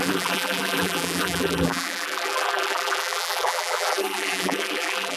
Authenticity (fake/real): fake